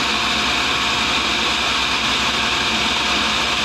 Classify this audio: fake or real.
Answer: real